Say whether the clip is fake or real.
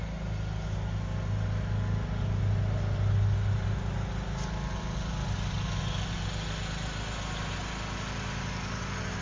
real